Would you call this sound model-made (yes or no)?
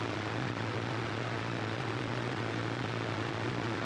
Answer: yes